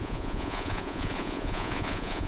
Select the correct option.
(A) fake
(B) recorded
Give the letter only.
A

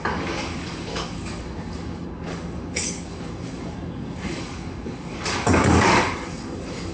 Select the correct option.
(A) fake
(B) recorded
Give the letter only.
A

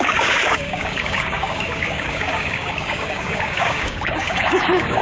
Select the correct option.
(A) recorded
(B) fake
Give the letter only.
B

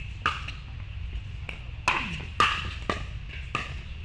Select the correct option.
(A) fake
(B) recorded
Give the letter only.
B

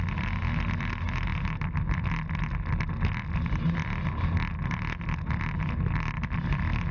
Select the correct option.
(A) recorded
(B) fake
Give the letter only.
A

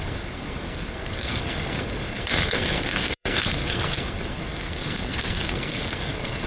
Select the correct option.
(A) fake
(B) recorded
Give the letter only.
A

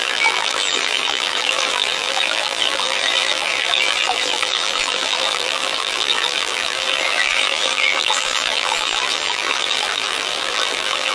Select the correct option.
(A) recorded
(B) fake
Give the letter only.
B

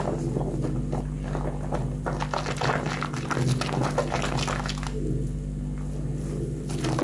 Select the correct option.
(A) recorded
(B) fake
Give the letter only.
A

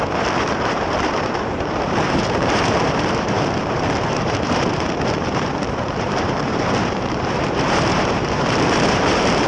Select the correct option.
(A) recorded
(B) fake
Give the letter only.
B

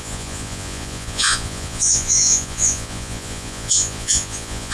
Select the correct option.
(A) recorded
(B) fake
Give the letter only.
B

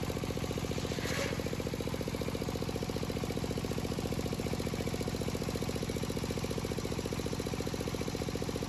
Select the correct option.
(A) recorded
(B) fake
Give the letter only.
A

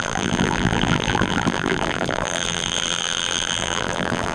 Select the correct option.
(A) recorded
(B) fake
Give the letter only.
B